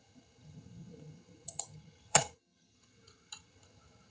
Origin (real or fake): fake